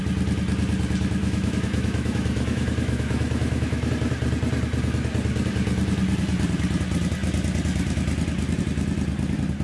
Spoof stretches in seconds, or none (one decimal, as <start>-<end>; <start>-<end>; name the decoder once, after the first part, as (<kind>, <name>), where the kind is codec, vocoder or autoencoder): 1.2-3.9 (autoencoder, DAC-VAE)